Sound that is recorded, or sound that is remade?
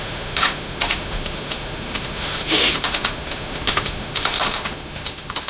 remade